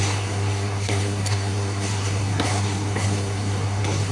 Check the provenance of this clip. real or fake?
fake